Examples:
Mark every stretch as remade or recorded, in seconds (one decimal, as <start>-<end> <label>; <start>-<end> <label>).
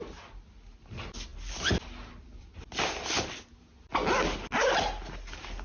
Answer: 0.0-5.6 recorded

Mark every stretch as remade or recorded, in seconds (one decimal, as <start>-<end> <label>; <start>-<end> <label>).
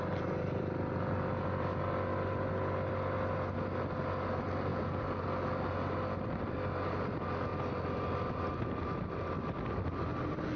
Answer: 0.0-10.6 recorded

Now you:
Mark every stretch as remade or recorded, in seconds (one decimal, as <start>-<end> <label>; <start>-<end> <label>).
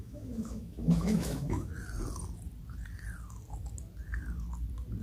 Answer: 0.0-1.7 remade; 1.7-5.0 recorded